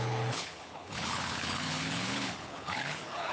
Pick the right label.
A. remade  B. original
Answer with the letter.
A